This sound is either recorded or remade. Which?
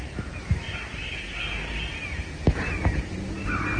recorded